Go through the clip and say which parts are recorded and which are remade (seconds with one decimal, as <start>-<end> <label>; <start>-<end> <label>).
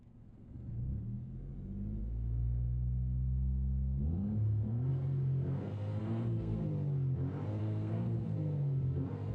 0.0-1.5 remade; 1.5-2.0 recorded; 2.0-6.6 remade; 6.6-7.6 recorded; 7.6-9.3 remade